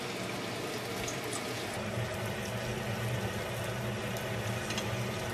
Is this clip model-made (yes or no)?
no